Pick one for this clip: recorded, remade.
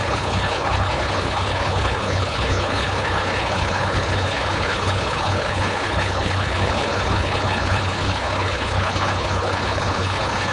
remade